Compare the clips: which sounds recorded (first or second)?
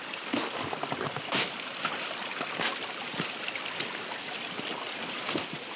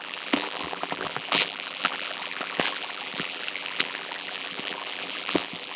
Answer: first